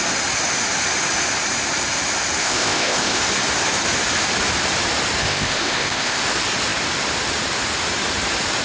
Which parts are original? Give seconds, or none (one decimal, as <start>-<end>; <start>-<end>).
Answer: 0.0-2.4; 3.2-5.2; 6.2-8.6